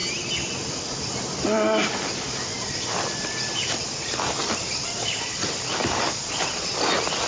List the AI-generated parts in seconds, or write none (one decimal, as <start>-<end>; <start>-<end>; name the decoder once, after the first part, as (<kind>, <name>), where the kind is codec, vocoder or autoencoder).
2.5-7.3 (vocoder, BigVGAN v2)

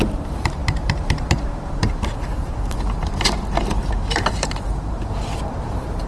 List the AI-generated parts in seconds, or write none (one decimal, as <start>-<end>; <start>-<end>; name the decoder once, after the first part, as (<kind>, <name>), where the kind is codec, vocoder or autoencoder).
0.0-6.1 (vocoder, BigVGAN v2)

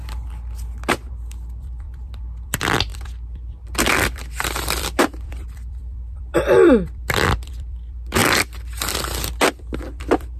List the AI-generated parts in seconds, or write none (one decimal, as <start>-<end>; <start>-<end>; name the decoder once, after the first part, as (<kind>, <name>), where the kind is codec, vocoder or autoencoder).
0.9-8.2 (vocoder, BigVGAN v2); 9.5-10.4

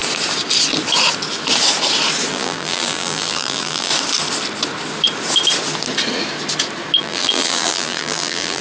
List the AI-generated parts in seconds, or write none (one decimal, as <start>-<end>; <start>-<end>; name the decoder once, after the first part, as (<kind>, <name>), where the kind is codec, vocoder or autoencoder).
2.3-3.9 (vocoder, BigVGAN v2); 7.0-8.6

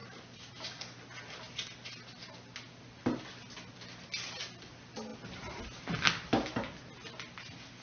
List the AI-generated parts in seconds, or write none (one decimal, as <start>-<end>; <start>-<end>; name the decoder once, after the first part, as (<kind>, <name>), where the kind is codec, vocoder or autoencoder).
0.0-0.5 (vocoder, BigVGAN v2)

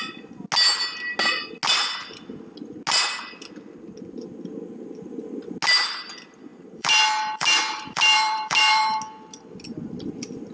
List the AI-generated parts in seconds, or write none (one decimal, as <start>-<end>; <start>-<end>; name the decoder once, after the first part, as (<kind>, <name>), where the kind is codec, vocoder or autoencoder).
6.5-9.0 (vocoder, BigVGAN v2)